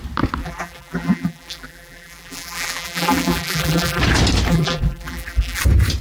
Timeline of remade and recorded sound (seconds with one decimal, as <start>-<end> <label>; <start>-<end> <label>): 0.0-0.4 recorded; 0.4-4.0 remade; 4.0-4.5 recorded; 4.5-5.6 remade; 5.6-6.0 recorded

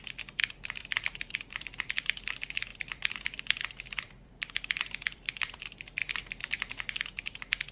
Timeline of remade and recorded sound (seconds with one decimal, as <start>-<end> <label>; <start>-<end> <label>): 0.0-0.4 recorded; 0.4-1.9 remade; 1.9-2.7 recorded; 2.7-5.6 remade; 5.6-7.7 recorded

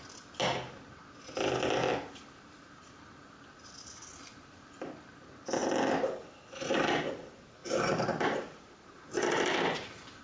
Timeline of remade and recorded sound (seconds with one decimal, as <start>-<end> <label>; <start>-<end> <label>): 0.0-1.9 recorded; 1.9-3.1 remade; 3.1-7.6 recorded; 7.6-10.2 remade

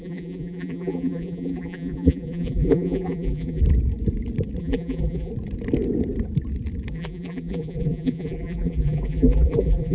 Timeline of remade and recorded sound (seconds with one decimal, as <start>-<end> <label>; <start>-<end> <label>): 0.0-3.6 remade; 3.6-4.6 recorded; 4.6-5.3 remade; 5.3-6.9 recorded; 6.9-9.9 remade

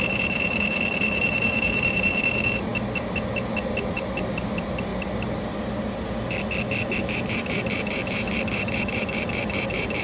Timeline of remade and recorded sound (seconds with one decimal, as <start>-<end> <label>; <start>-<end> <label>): 0.0-2.7 remade; 2.7-3.9 recorded; 3.9-4.9 remade; 4.9-7.0 recorded; 7.0-10.0 remade